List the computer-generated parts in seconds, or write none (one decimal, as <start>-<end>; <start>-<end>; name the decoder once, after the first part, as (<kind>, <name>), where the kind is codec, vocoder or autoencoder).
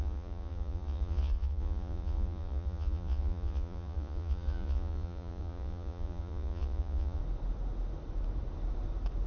0.0-7.2 (vocoder, Vocos)